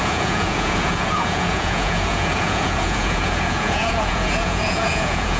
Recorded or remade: remade